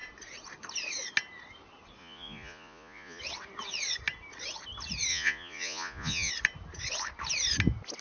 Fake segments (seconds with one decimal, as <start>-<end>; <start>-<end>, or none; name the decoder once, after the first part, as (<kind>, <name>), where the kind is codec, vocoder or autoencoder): 2.0-3.2 (vocoder, Vocos); 5.1-6.3